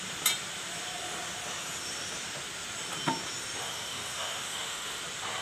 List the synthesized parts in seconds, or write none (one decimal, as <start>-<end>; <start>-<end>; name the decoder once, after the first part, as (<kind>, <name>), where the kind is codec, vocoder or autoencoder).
3.6-5.0 (autoencoder, DAC-VAE)